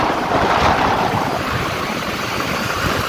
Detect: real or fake fake